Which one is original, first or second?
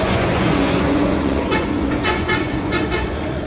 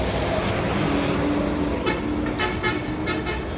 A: second